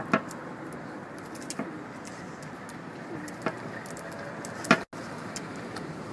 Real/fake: real